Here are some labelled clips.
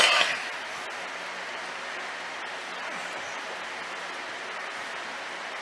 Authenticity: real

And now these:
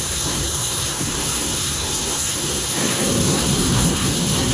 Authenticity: fake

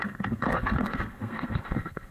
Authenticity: fake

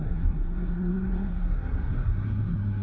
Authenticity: fake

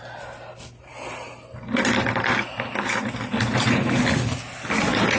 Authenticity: real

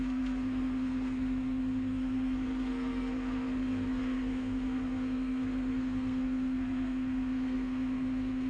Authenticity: fake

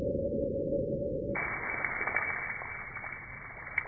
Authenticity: real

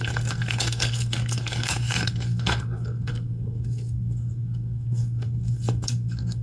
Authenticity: fake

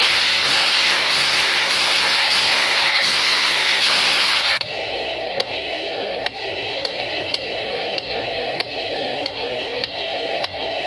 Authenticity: fake